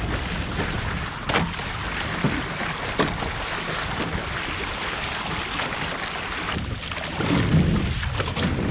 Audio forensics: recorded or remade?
recorded